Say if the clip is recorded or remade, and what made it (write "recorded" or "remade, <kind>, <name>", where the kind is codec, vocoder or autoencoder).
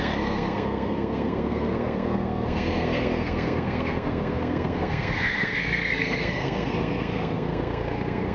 remade, codec, SNAC